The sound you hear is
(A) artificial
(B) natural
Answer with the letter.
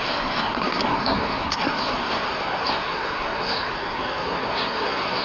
A